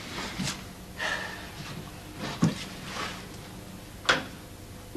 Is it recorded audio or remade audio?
recorded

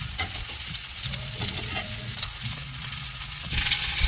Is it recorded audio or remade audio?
remade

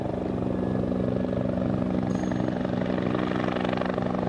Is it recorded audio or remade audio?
recorded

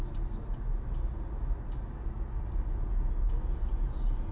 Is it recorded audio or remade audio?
recorded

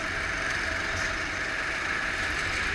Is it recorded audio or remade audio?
recorded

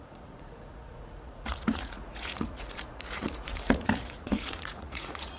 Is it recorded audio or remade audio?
remade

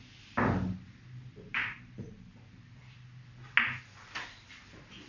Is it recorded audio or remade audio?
recorded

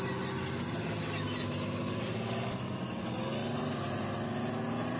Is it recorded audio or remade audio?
recorded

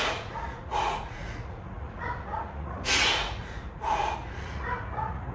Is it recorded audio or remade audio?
remade